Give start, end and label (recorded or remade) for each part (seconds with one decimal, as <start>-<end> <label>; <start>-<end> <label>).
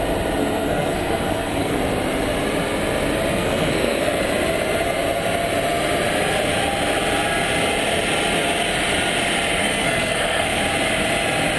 0.0-0.4 recorded; 0.4-1.8 remade; 1.8-3.3 recorded; 3.3-4.2 remade; 4.2-9.6 recorded; 9.6-10.6 remade; 10.6-11.6 recorded